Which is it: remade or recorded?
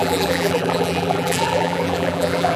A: remade